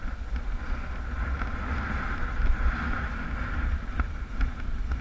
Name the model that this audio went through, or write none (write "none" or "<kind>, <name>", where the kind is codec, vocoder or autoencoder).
none